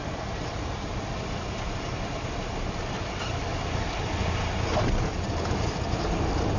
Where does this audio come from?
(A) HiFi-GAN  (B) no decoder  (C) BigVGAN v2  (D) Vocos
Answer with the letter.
B